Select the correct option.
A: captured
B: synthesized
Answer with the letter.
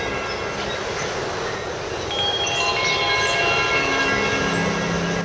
A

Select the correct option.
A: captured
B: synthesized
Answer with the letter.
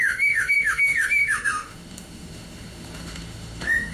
B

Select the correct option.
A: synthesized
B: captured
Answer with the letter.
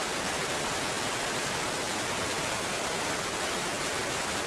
B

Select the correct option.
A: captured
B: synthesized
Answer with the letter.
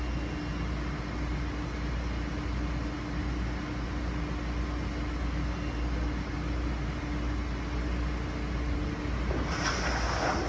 A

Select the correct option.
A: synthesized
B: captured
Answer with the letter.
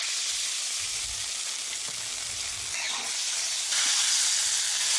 B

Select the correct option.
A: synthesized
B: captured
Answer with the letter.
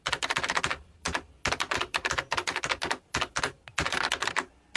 B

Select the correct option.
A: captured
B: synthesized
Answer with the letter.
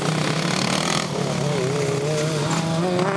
A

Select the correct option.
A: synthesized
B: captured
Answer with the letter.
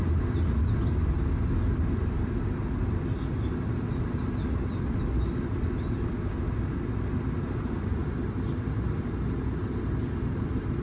B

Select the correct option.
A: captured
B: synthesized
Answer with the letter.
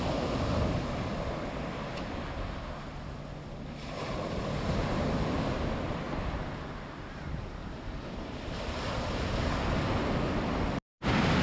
A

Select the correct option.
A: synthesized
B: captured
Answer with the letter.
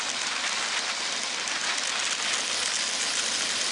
B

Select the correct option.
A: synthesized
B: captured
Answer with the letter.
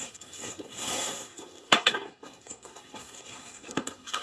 A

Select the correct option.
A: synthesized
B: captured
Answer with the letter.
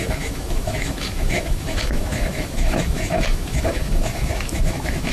A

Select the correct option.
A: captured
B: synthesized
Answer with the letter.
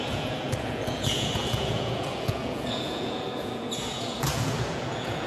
B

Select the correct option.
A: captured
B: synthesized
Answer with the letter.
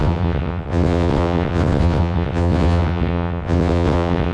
B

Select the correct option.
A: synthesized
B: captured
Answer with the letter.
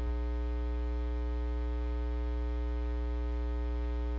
B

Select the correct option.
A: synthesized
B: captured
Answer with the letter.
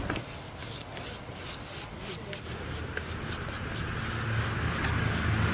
B